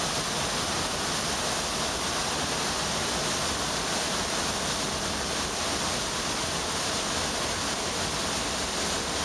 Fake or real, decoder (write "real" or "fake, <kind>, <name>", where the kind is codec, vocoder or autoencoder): real